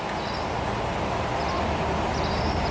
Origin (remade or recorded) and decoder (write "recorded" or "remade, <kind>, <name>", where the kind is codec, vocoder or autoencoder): recorded